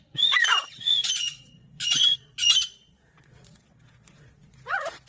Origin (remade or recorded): remade